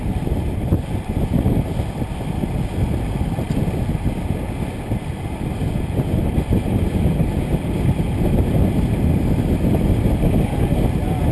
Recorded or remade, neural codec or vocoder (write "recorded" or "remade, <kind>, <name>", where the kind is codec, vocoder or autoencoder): recorded